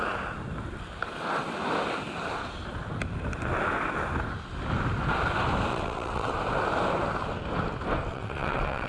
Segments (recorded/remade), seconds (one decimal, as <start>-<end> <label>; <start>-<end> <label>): 0.0-5.7 recorded; 5.7-6.3 remade; 6.3-8.1 recorded; 8.1-8.9 remade

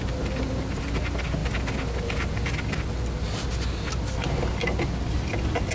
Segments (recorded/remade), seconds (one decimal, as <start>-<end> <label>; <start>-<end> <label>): 0.0-5.7 recorded

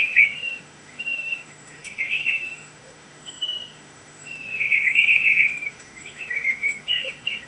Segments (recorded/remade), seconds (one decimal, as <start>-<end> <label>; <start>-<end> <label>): 0.0-7.5 remade

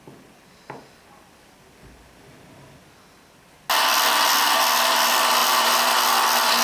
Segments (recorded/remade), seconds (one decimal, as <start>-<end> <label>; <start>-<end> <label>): 0.0-5.4 recorded; 5.4-6.6 remade

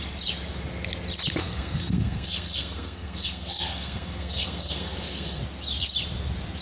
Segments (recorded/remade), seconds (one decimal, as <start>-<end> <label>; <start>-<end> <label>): 0.0-1.4 recorded; 1.4-5.4 remade; 5.4-6.6 recorded

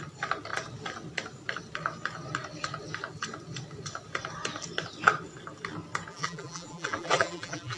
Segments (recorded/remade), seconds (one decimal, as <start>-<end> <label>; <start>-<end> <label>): 0.0-6.1 recorded; 6.1-7.8 remade

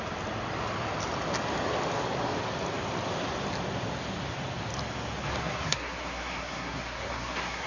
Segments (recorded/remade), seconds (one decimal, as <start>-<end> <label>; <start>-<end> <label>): 0.0-5.4 recorded; 5.4-7.7 remade

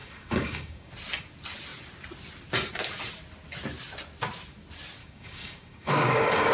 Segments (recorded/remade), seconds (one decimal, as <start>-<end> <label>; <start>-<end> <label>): 0.0-0.9 remade; 0.9-5.0 recorded; 5.0-6.5 remade